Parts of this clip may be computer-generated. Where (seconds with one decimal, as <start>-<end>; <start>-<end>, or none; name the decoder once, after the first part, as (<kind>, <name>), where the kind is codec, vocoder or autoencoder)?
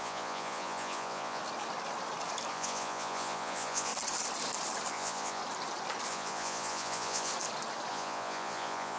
0.0-1.4 (vocoder, Vocos); 2.5-3.9; 4.9-5.4; 6.1-7.3; 7.9-9.0